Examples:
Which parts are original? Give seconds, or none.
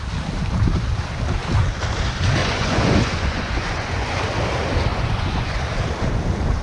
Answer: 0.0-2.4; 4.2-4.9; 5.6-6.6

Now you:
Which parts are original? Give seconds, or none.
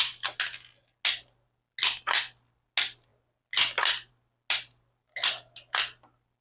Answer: 0.0-6.4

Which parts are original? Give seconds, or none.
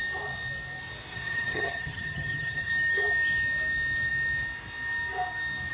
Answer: 0.0-1.1; 2.7-5.7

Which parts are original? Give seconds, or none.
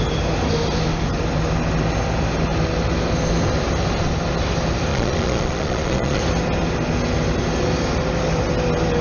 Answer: 0.0-4.9; 6.2-9.0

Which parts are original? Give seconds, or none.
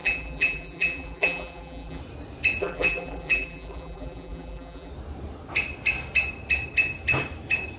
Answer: 2.0-2.6; 4.9-7.8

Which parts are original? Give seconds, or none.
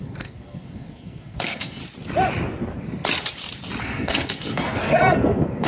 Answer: 1.8-3.8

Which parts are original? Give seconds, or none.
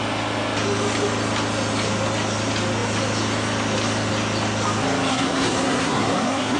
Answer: 0.0-5.1